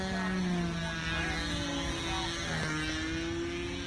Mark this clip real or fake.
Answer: real